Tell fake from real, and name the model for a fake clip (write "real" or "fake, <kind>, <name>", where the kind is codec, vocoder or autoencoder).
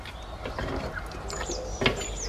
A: real